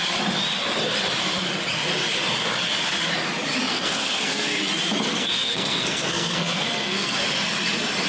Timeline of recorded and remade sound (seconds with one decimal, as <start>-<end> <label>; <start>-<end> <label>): 0.0-3.7 recorded; 3.7-4.6 remade; 4.6-5.1 recorded; 5.1-7.2 remade; 7.2-8.1 recorded